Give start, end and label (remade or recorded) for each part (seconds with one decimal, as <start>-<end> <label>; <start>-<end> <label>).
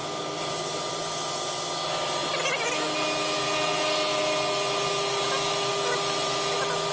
0.0-6.9 recorded